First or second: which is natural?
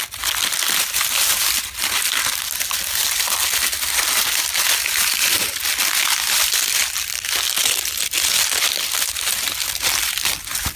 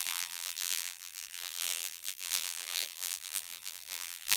first